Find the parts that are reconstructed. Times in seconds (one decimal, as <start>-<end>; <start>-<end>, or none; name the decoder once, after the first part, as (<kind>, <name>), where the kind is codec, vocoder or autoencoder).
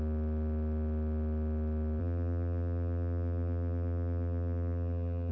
2.0-5.3 (vocoder, BigVGAN v2)